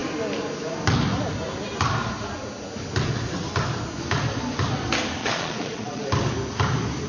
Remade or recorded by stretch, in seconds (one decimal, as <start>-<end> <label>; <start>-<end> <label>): 0.0-5.2 recorded; 5.2-6.1 remade; 6.1-7.1 recorded